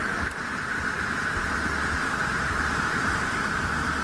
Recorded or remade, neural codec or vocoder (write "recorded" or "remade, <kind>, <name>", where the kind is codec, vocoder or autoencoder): recorded